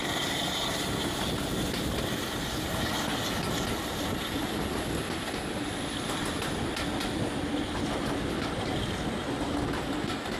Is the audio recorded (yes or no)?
yes